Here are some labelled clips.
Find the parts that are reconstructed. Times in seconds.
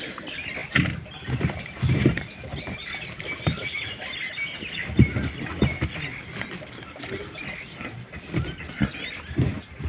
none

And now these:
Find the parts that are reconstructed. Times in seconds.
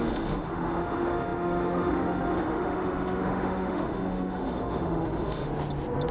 0.0-5.5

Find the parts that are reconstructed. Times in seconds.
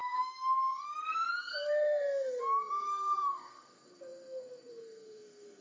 0.0-5.6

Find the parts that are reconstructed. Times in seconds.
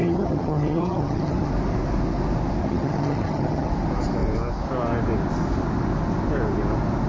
0.0-1.5; 2.6-3.7